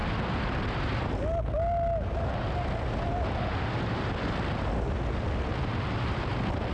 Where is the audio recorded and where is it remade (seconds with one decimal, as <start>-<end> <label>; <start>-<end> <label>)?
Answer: 0.0-6.7 recorded